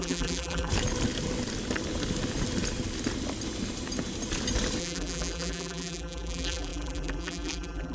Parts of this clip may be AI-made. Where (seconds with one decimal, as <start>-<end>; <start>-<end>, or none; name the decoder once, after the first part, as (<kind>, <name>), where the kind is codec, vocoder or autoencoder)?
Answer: 0.0-0.7 (vocoder, BigVGAN v2); 4.8-7.9